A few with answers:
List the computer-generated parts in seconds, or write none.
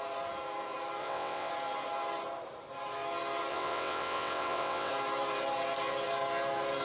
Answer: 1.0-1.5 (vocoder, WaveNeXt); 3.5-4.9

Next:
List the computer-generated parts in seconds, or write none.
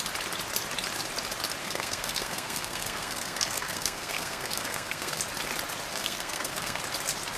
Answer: 1.6-5.2 (codec, SNAC); 5.9-6.8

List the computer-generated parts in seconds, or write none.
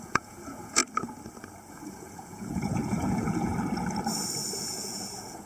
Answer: 0.0-0.8 (vocoder, Vocos); 1.7-3.5; 4.6-5.5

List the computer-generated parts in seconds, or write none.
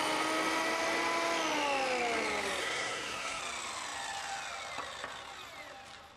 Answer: 2.6-3.4 (codec, SNAC)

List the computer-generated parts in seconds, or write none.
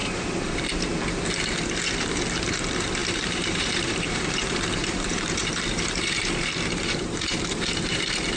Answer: 0.0-0.6 (vocoder, BigVGAN v2); 3.0-8.0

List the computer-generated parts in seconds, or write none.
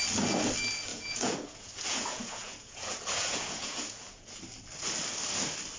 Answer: 0.9-4.4 (vocoder, Vocos)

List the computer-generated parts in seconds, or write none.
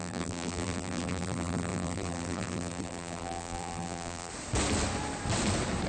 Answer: 0.0-4.3 (vocoder, BigVGAN v2)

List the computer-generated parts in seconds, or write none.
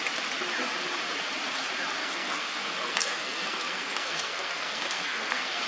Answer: 2.0-5.7 (codec, SNAC)